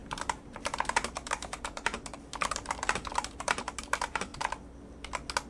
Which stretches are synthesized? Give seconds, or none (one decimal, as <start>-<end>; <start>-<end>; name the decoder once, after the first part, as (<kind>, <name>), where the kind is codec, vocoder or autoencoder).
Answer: 0.0-4.3 (vocoder, BigVGAN v2)